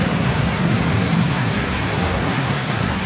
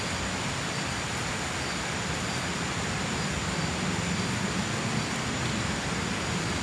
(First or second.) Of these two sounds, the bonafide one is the second